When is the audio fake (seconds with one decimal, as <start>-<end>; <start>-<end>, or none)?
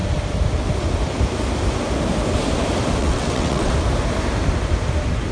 3.0-3.7